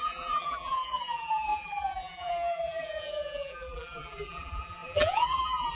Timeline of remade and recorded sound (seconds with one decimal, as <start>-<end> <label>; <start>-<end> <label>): 0.0-5.7 remade